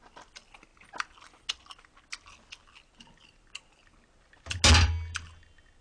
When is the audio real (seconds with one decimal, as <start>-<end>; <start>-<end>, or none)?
0.0-5.8